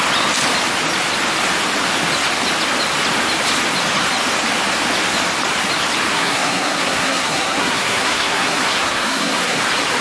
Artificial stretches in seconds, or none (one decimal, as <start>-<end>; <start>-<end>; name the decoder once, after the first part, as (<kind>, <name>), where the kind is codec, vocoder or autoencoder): 6.1-9.6 (codec, SNAC)